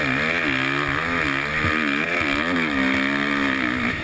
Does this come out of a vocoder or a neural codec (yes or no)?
no